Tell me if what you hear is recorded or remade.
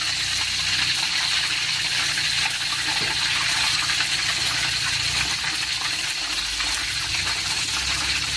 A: recorded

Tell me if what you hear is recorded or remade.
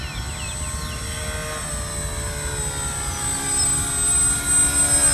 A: recorded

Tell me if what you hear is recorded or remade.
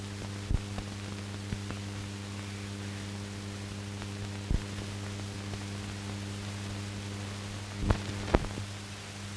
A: recorded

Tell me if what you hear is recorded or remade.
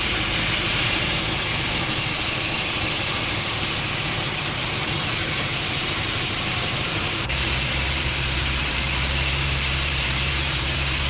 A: remade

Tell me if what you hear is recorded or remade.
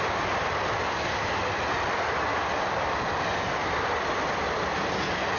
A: recorded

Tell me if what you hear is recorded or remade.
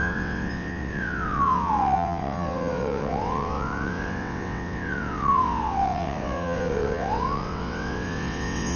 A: remade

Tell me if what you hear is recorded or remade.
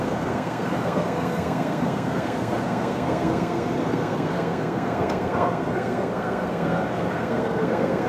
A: remade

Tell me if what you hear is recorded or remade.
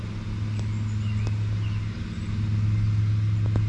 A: recorded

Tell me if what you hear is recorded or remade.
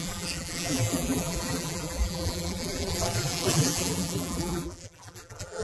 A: remade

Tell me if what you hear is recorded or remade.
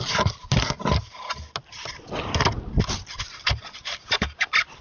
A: recorded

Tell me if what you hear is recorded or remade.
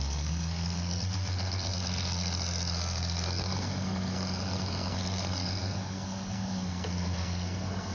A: remade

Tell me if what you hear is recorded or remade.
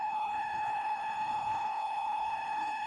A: remade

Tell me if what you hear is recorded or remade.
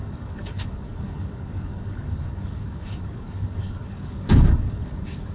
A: remade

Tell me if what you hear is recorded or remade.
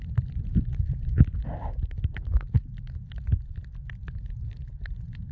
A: recorded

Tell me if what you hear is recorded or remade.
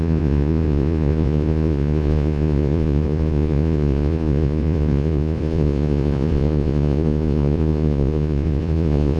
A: remade